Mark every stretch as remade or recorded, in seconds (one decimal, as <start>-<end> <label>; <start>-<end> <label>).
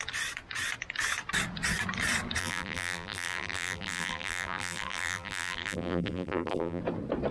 0.0-2.4 recorded; 2.4-6.8 remade; 6.8-7.3 recorded